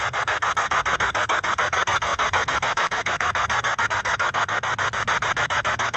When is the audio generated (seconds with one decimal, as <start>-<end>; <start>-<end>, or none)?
0.0-4.7; 5.4-6.0